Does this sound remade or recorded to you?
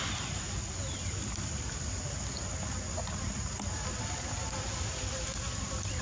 recorded